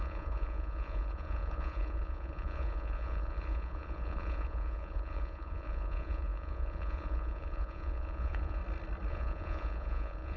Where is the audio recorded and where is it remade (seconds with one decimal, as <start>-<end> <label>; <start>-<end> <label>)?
0.0-8.6 remade; 8.6-9.1 recorded; 9.1-10.4 remade